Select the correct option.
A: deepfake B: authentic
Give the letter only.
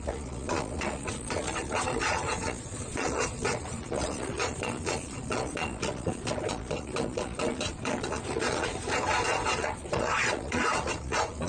A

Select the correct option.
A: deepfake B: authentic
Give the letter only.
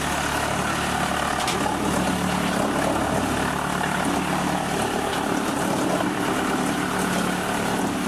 B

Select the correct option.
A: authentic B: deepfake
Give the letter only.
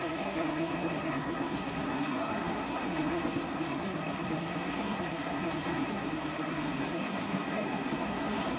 B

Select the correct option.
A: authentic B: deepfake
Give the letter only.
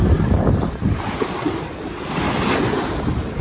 A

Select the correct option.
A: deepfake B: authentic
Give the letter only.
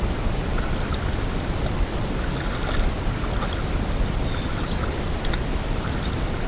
B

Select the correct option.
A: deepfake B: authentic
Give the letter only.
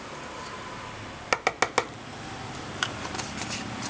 B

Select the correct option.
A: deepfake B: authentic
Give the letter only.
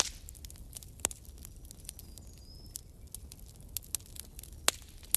B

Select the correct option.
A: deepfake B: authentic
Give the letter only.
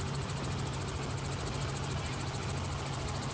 B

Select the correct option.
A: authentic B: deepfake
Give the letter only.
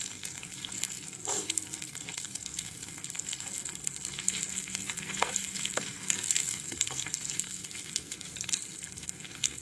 B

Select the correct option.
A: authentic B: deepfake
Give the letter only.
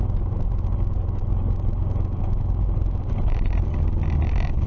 A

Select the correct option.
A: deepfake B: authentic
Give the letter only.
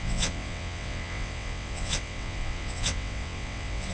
A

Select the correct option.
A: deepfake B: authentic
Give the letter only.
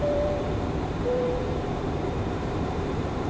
A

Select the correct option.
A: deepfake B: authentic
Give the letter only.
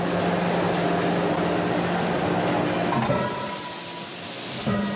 B